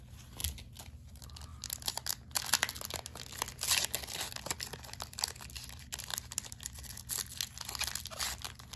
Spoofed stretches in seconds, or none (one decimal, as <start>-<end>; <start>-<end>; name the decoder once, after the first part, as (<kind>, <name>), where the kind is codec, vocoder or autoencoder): none